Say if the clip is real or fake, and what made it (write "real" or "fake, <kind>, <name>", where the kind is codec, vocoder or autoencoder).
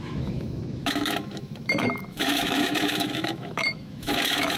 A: fake, autoencoder, DAC-VAE